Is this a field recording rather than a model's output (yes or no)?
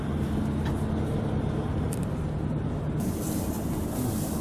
yes